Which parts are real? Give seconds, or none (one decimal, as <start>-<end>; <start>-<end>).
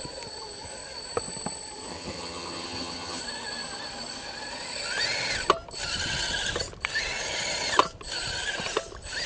0.0-1.9; 3.2-9.3